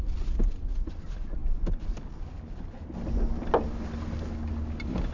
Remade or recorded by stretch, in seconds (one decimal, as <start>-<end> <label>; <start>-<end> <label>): 0.0-5.1 recorded

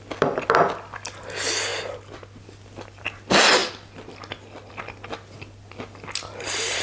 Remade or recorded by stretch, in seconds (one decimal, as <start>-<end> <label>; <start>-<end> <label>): 0.0-6.8 recorded

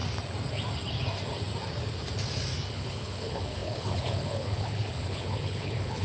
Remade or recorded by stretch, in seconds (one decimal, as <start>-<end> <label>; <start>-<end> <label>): 0.0-2.7 recorded; 2.7-6.0 remade

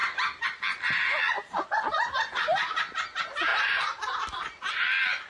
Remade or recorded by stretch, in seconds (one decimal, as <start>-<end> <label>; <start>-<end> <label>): 0.0-1.2 remade; 1.2-5.3 recorded

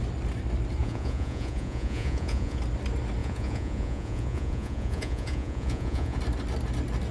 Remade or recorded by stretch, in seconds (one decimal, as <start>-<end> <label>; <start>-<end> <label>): 0.0-0.8 recorded; 0.8-2.6 remade; 2.6-3.2 recorded; 3.2-6.2 remade; 6.2-7.1 recorded